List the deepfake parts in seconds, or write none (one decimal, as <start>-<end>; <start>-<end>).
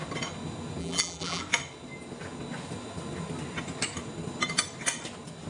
0.8-1.4